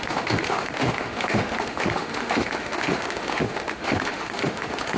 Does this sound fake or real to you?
fake